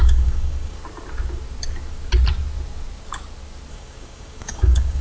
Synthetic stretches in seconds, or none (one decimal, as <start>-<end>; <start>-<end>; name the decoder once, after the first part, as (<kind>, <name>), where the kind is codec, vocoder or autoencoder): 0.0-0.8 (codec, DAC); 3.7-5.0